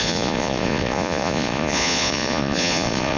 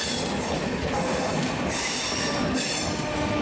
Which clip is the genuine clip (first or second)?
second